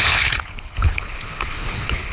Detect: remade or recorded remade